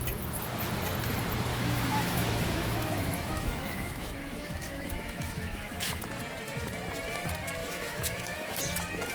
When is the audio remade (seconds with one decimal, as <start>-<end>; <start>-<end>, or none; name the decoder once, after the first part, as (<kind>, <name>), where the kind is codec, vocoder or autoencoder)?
1.5-6.0 (autoencoder, DAC-VAE); 7.6-8.6